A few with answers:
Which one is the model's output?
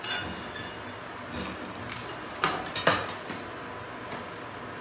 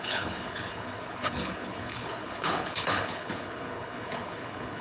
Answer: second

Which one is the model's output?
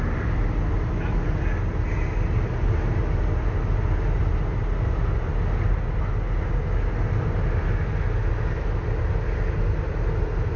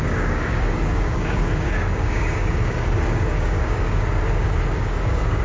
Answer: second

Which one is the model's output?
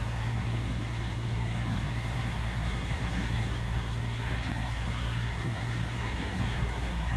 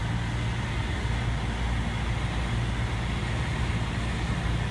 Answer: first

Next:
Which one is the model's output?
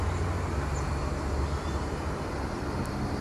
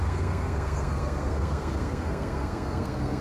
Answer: second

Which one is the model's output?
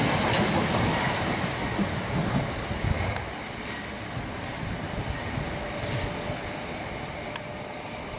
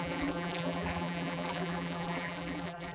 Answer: second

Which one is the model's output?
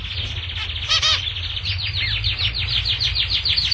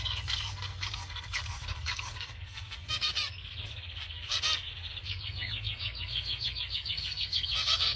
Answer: second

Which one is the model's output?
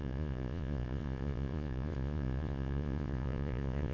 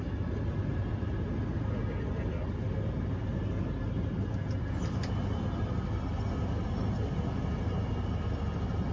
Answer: first